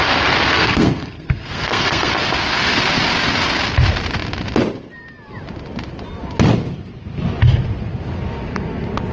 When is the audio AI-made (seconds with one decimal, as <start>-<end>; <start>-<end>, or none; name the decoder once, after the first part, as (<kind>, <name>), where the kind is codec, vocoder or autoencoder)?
0.5-2.1 (codec, SNAC)